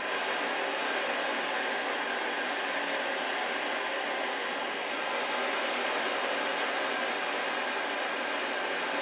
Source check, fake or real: real